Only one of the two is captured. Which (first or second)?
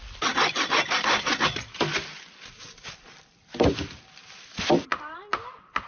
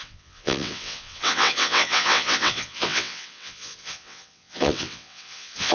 first